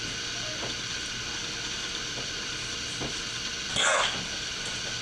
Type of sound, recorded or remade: recorded